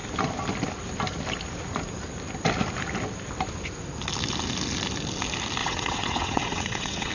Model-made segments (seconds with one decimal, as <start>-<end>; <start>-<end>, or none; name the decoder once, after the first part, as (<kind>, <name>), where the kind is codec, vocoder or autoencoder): 5.6-7.1 (vocoder, WaveNeXt)